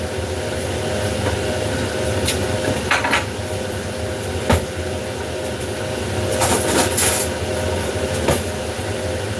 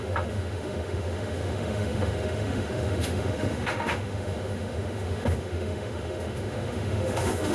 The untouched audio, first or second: first